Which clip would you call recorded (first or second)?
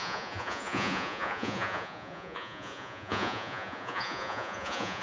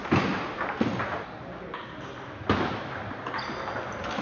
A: second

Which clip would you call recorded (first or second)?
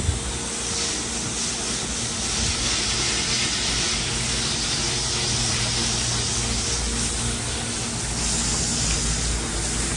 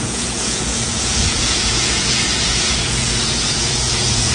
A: first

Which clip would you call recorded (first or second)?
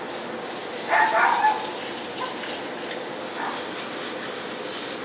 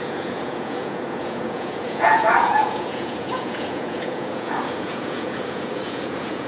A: first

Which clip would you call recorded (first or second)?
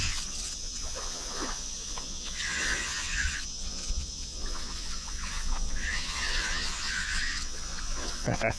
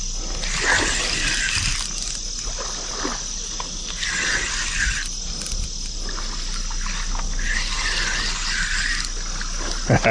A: second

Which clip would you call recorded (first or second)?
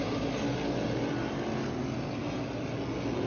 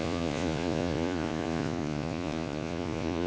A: first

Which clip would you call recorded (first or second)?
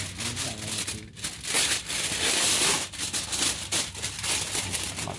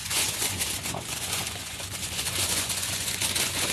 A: first